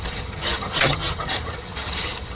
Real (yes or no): no